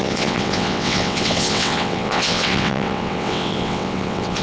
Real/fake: fake